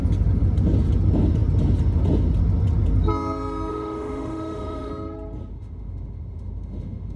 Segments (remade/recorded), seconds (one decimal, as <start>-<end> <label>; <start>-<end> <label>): 0.0-3.7 recorded; 3.7-4.9 remade; 4.9-5.5 recorded; 5.5-7.2 remade